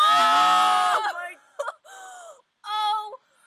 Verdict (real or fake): real